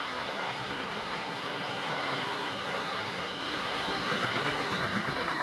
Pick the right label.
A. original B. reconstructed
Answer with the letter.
B